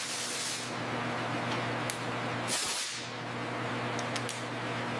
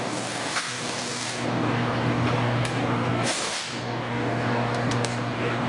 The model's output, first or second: second